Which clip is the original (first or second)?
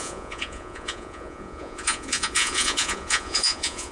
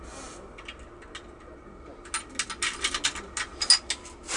second